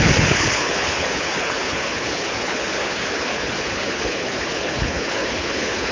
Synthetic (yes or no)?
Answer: yes